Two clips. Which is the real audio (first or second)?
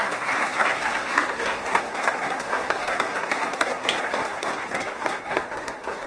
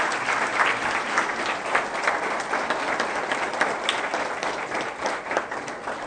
second